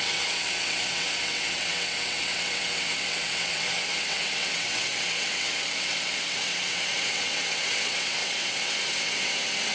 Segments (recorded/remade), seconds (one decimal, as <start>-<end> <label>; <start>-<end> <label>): 0.0-9.7 remade